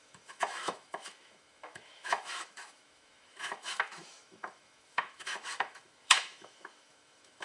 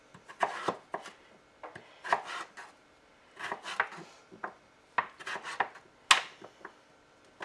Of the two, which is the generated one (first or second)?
first